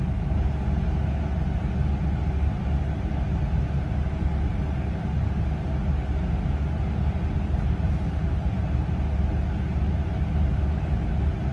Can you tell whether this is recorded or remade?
recorded